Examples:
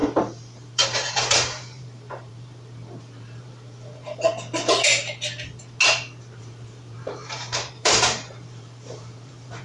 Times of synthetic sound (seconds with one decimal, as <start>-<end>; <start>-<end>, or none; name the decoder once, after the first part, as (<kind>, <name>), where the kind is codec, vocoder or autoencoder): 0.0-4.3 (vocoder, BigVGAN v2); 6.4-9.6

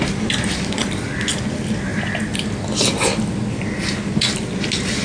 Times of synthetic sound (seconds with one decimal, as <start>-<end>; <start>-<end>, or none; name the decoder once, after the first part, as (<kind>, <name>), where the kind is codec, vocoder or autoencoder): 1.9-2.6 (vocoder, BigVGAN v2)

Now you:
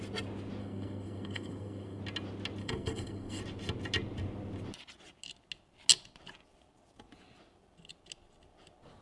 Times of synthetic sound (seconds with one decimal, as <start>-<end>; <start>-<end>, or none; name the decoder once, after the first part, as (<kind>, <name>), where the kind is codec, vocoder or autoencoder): 0.6-2.0 (codec, SNAC); 2.6-3.4